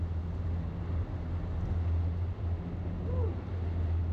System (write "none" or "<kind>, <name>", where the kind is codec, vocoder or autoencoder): none